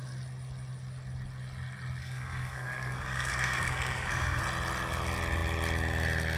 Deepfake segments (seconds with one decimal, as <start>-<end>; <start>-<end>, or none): 2.0-4.4